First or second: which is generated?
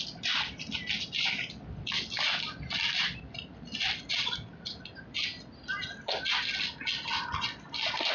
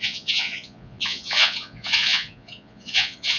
second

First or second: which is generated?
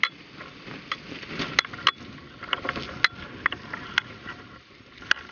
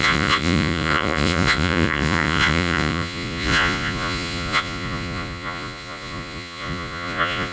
second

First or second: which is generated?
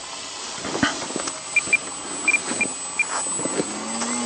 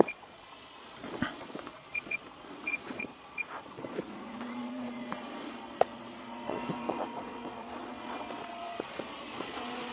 second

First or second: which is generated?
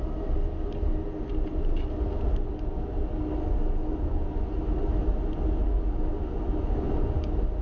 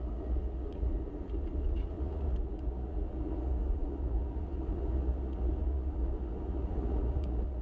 second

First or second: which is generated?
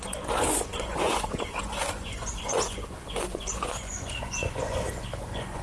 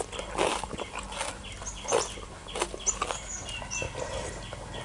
first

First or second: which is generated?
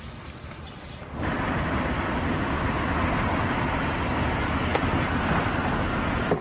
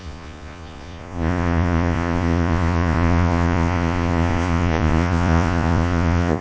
second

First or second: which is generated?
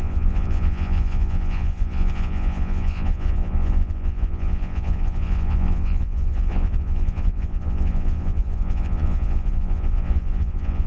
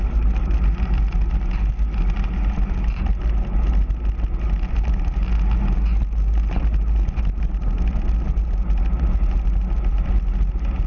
first